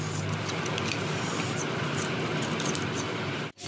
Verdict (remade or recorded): recorded